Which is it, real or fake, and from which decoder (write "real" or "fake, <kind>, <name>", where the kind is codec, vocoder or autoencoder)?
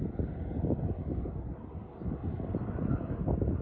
real